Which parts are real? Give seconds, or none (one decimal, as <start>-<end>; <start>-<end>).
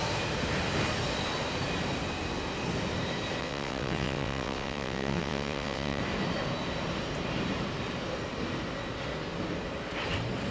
0.0-3.4; 6.0-10.5